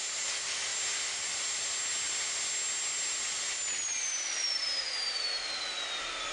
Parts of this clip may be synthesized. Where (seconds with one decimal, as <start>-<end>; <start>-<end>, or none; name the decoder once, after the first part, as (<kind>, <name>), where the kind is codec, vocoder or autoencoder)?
none